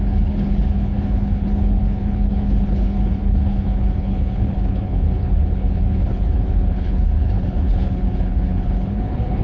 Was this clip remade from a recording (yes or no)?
yes